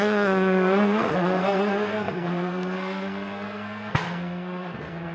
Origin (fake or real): fake